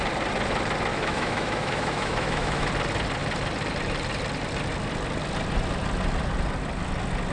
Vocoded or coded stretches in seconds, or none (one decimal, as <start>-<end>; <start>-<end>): 0.9-2.7